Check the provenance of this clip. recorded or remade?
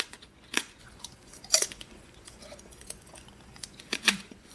remade